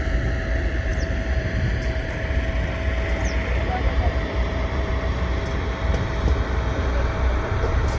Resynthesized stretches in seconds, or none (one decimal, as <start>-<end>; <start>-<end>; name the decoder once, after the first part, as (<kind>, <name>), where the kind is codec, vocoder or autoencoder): 0.9-2.5 (vocoder, BigVGAN v2); 3.6-4.9